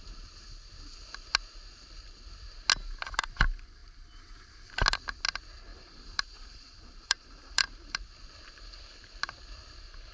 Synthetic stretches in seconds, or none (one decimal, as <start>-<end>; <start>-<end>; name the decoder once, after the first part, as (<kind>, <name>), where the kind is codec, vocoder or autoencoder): 5.7-8.0 (vocoder, BigVGAN v2)